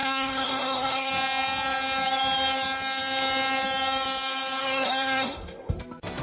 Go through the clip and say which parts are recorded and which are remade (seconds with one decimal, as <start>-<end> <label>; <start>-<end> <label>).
0.0-1.1 remade; 1.1-4.6 recorded; 4.6-5.8 remade; 5.8-6.2 recorded